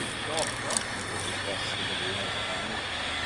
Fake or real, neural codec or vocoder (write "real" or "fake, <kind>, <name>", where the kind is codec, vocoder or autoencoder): real